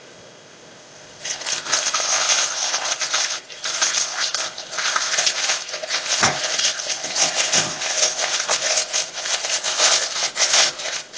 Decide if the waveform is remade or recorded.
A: remade